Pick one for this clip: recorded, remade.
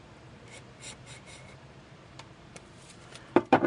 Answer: remade